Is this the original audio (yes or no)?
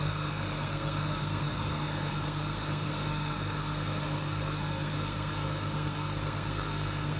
no